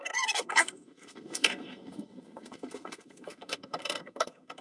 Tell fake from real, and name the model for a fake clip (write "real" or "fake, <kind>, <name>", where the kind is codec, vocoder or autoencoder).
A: fake, codec, SNAC